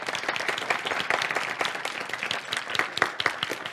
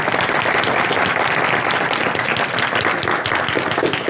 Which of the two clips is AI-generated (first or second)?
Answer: first